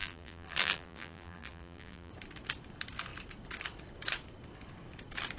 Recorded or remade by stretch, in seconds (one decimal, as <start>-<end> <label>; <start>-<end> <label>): 0.0-2.1 remade; 2.1-5.4 recorded